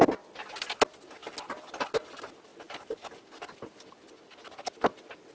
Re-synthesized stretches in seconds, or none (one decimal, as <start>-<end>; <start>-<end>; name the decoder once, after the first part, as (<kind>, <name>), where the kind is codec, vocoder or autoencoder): none